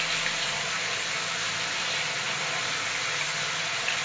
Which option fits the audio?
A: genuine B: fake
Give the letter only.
A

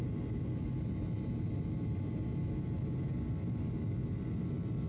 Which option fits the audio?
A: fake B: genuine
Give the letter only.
B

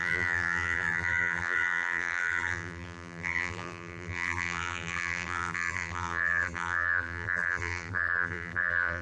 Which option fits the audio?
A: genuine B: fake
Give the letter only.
B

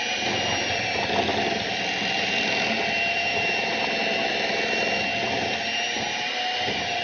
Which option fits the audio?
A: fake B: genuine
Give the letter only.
B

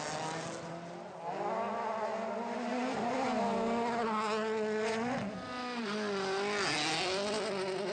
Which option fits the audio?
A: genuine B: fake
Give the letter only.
A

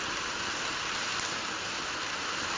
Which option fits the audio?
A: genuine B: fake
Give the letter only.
A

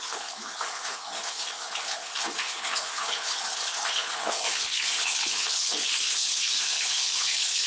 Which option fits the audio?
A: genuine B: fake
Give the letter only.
B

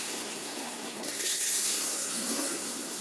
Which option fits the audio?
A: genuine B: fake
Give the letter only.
B